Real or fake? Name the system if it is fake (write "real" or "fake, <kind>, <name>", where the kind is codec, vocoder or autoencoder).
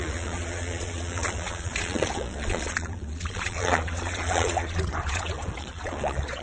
fake, vocoder, Vocos